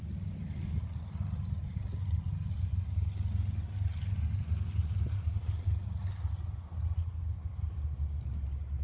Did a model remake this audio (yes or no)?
no